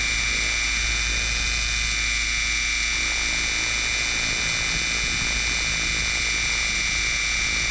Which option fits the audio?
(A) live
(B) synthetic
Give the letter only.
A